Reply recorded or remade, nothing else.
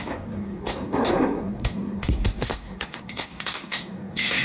remade